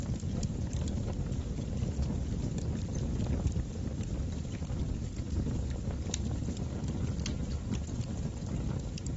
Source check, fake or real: real